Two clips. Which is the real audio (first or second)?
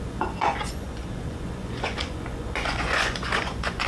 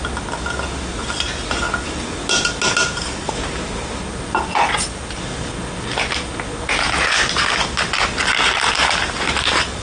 second